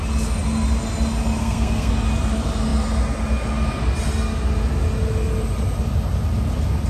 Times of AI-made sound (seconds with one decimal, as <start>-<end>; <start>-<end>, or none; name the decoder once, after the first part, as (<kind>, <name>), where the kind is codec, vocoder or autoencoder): 1.4-1.9 (codec, SNAC)